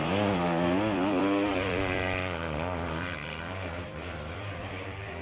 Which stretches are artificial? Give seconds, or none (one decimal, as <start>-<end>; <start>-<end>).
0.0-5.2